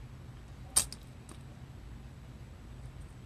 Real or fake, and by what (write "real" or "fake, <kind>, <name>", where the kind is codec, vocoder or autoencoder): real